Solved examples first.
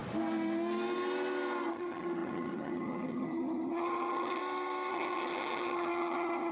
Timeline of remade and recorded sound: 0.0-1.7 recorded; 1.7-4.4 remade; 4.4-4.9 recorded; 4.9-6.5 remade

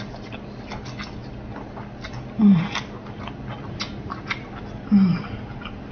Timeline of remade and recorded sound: 0.0-5.9 recorded

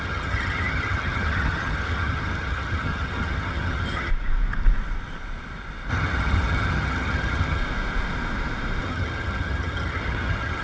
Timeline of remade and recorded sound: 0.0-4.1 remade; 4.1-5.9 recorded; 5.9-7.6 remade; 7.6-8.8 recorded; 8.8-10.6 remade

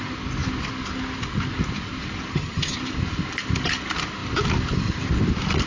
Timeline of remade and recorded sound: 0.0-2.3 recorded; 2.3-2.8 remade; 2.8-5.7 recorded

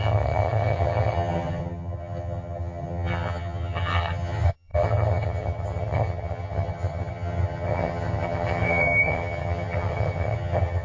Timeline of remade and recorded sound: 0.0-10.8 remade

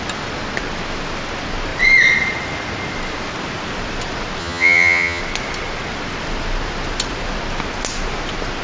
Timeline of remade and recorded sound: 0.0-4.4 recorded; 4.4-5.2 remade; 5.2-8.6 recorded